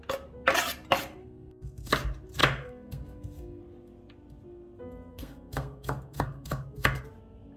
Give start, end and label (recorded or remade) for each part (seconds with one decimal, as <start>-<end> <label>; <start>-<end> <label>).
0.0-1.2 recorded; 1.2-1.9 remade; 1.9-2.4 recorded; 2.4-3.6 remade; 3.6-5.1 recorded; 5.1-7.0 remade; 7.0-7.6 recorded